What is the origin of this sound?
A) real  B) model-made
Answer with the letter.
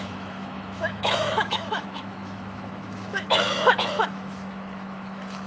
B